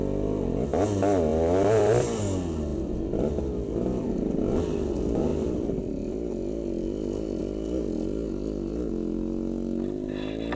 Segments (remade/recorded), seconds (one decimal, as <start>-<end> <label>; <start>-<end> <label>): 0.0-1.3 recorded; 1.3-2.2 remade; 2.2-2.7 recorded; 2.7-3.3 remade; 3.3-5.3 recorded; 5.3-7.4 remade; 7.4-10.6 recorded